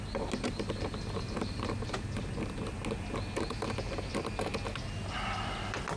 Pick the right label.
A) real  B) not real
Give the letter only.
A